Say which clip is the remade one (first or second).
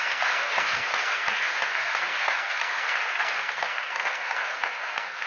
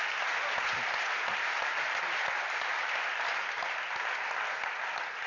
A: first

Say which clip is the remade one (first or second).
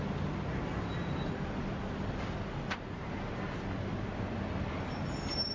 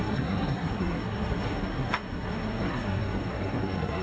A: second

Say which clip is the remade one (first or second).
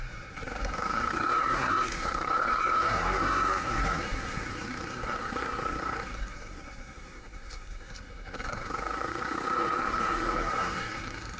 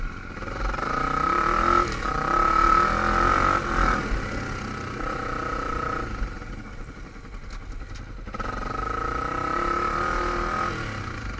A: first